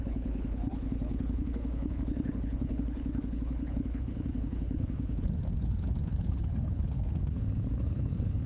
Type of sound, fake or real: fake